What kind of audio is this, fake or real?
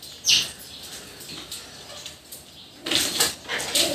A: real